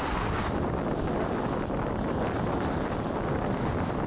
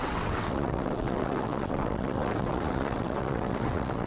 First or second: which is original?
first